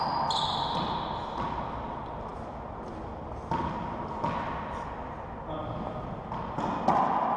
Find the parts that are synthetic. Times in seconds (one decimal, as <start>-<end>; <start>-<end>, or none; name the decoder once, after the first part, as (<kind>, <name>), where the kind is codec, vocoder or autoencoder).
none